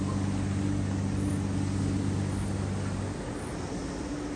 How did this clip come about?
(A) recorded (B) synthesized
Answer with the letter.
A